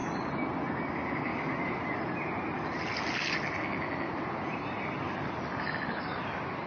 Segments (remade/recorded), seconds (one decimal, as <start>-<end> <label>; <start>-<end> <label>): 0.0-6.7 recorded